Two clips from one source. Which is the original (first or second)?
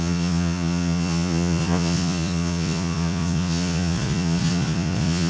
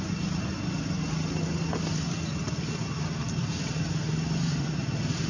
second